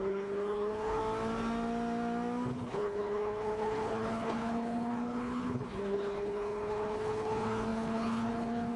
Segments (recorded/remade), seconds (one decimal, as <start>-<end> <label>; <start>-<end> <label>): 0.0-1.0 remade; 1.0-2.5 recorded; 2.5-8.8 remade